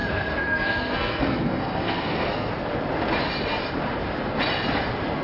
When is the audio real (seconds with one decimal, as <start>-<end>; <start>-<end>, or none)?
2.5-5.2